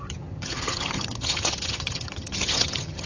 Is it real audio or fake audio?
fake